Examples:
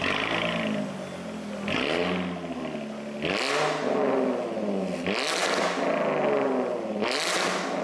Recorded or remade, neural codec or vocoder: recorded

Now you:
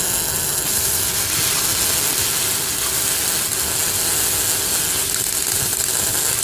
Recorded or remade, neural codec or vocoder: recorded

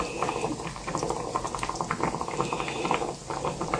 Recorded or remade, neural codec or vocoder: recorded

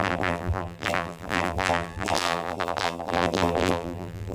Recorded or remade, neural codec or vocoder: remade, vocoder, BigVGAN v2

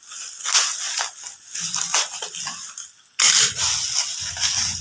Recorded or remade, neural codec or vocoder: recorded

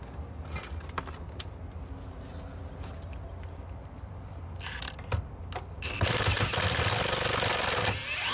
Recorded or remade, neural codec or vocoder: recorded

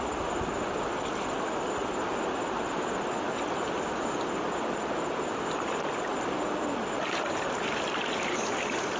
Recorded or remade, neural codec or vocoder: recorded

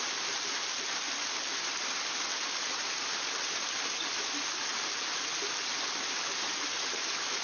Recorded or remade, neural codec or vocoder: recorded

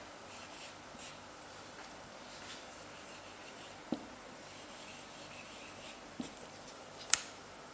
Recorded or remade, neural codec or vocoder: remade, vocoder, BigVGAN v2